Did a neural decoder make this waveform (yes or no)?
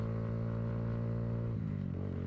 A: no